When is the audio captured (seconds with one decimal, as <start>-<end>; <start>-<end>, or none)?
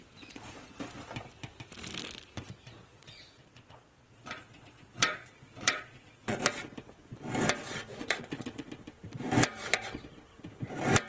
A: 0.8-2.9; 6.4-7.9; 8.7-11.1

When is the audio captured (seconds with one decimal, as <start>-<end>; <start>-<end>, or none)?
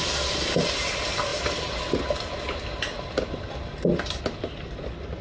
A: 0.0-5.2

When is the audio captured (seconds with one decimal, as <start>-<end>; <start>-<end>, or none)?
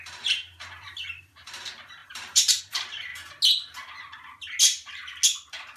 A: 3.1-4.6; 5.0-5.8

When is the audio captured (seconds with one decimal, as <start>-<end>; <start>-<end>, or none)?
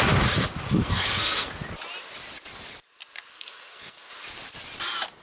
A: 0.0-0.8; 1.5-3.3; 4.1-5.2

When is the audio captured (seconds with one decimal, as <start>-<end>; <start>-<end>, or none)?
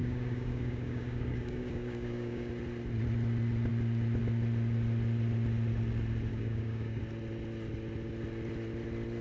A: 2.5-6.3; 7.0-9.2